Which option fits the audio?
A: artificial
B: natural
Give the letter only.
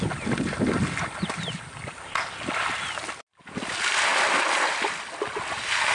B